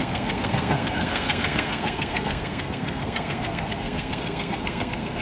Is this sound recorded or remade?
remade